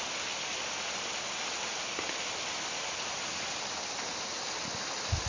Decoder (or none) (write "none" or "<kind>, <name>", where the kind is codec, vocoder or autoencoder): none